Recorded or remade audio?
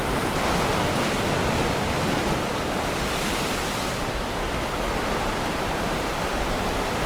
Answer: recorded